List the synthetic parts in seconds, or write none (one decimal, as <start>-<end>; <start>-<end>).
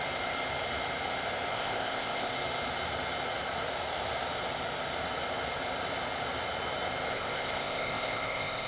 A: 1.5-2.3; 7.1-8.7